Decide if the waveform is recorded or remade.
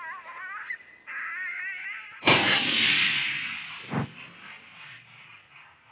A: recorded